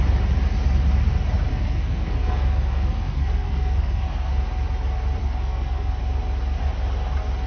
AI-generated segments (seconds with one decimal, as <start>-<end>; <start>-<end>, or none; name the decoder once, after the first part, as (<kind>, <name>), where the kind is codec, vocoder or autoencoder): 1.5-4.3 (codec, SNAC); 5.2-6.0